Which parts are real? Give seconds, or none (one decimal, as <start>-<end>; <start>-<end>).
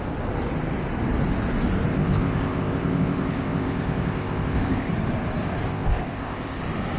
0.0-1.9; 4.9-5.7; 6.6-7.0